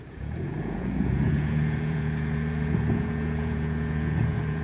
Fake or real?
fake